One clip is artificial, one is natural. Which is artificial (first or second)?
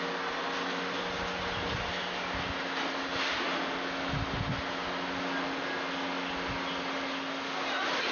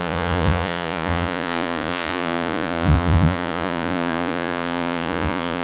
second